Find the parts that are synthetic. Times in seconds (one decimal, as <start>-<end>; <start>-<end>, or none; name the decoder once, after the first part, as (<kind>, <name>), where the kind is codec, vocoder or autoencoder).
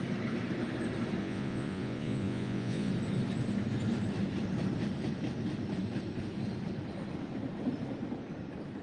1.2-2.9 (vocoder, Vocos)